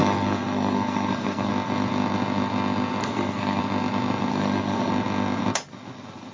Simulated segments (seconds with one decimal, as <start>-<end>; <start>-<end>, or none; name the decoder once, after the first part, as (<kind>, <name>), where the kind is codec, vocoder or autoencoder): 0.0-1.5 (codec, SNAC); 3.0-3.6; 4.3-4.9